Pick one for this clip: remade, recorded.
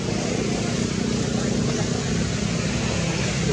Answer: recorded